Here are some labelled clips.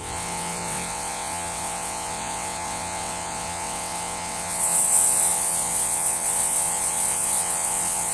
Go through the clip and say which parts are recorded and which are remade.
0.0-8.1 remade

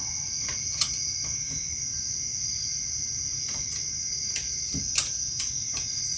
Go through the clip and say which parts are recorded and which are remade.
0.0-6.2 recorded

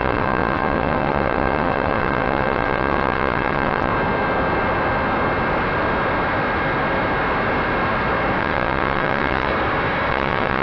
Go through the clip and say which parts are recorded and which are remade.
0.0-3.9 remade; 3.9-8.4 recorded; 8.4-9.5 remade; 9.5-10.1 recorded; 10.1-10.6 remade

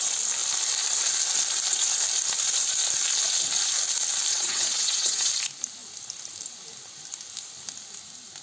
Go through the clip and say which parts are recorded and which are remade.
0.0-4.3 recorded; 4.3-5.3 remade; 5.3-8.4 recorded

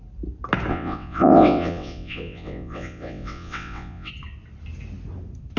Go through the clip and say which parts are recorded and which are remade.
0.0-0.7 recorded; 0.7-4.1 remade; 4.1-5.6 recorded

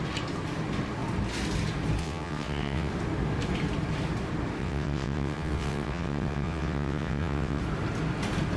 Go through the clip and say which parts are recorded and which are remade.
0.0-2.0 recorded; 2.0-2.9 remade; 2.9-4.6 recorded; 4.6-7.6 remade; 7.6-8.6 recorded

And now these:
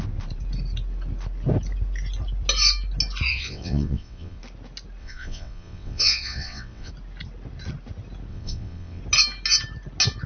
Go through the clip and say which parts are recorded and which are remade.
0.0-3.3 recorded; 3.3-4.4 remade; 4.4-5.0 recorded; 5.0-6.9 remade; 6.9-8.3 recorded; 8.3-9.0 remade; 9.0-10.3 recorded

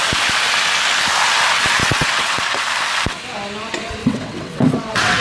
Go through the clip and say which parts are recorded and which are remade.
0.0-1.8 recorded; 1.8-2.6 remade; 2.6-4.0 recorded; 4.0-5.2 remade